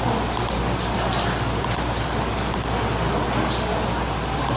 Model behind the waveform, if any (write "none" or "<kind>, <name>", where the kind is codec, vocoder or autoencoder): none